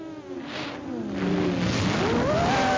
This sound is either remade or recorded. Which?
recorded